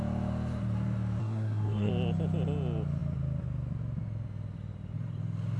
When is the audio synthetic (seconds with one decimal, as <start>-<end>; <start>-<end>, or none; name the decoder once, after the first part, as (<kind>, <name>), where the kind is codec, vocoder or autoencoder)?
1.2-1.9 (codec, SNAC)